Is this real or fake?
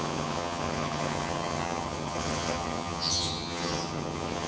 fake